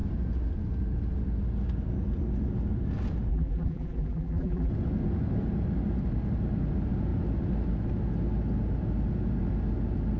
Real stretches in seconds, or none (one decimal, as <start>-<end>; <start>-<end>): 0.0-3.3; 4.7-10.2